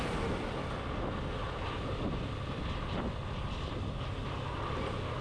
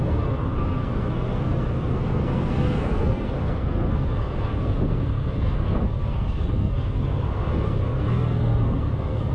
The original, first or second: first